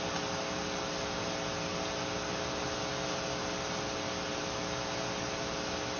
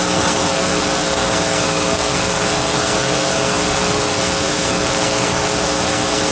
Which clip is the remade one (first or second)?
second